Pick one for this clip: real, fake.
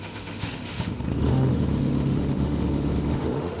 fake